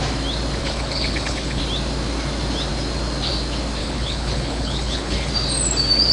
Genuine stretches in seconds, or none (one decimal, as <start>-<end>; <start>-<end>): 0.0-0.6; 1.6-3.8; 5.3-6.1